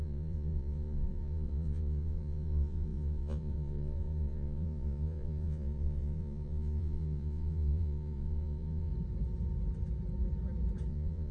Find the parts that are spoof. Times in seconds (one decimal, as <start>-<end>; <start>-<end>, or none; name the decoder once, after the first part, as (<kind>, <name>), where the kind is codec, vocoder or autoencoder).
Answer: 0.0-8.9 (vocoder, Vocos); 10.9-11.3